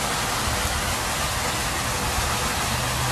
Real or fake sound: real